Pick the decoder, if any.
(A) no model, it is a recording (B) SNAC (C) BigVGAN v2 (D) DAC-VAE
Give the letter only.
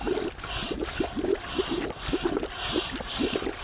A